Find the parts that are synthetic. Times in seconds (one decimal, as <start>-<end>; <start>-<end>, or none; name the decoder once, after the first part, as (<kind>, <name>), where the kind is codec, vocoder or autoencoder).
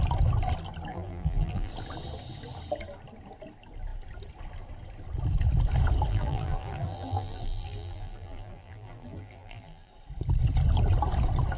0.9-1.7 (vocoder, BigVGAN v2); 6.1-9.9